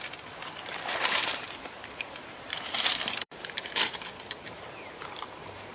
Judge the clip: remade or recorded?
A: remade